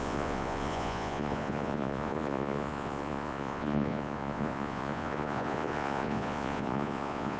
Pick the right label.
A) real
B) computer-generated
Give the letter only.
B